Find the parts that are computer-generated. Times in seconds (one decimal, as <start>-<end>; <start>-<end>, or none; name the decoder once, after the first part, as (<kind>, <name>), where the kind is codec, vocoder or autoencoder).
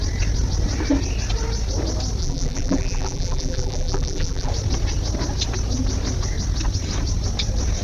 2.2-4.5 (vocoder, BigVGAN v2)